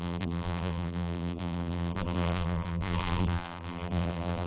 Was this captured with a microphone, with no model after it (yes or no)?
no